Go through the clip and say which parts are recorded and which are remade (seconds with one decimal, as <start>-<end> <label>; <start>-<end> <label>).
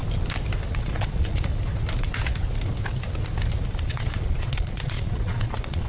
0.0-0.7 recorded; 0.7-1.5 remade; 1.5-3.8 recorded; 3.8-5.9 remade